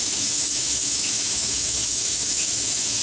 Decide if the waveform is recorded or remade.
remade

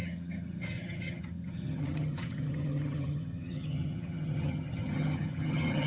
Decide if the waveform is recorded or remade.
remade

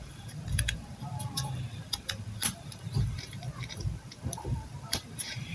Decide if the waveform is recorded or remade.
remade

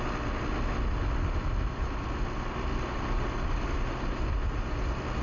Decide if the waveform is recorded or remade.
recorded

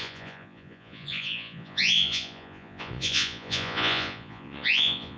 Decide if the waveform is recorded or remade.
remade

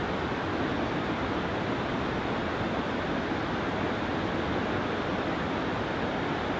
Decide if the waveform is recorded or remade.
recorded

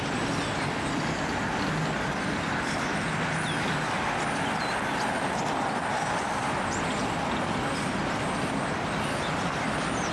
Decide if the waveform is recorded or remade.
recorded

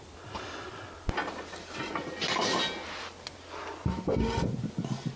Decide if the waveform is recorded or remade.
recorded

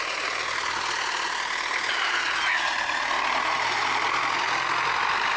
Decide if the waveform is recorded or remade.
recorded